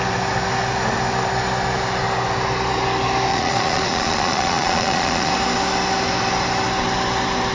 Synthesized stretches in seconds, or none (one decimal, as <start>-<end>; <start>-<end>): 3.3-5.3